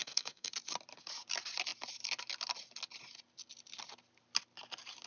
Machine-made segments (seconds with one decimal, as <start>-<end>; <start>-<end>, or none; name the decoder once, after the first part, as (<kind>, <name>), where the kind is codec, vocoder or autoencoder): 0.0-0.5 (codec, SNAC)